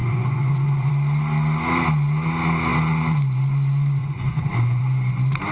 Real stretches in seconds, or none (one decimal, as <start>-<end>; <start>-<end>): 0.9-4.0; 4.8-5.5